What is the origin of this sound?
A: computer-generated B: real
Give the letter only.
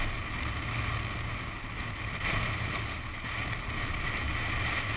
B